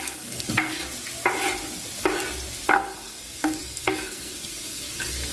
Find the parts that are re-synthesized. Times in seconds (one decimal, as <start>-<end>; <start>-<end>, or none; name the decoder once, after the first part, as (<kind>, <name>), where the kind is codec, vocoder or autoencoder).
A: 0.0-0.8 (codec, SNAC); 2.7-5.3